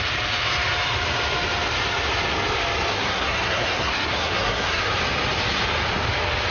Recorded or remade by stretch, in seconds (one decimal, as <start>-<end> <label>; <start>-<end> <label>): 0.0-2.9 recorded; 2.9-4.8 remade; 4.8-6.5 recorded